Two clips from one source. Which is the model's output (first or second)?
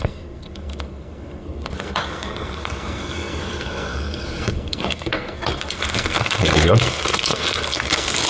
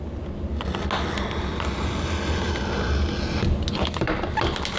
first